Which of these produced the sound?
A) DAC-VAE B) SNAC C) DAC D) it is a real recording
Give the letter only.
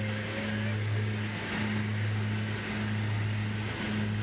D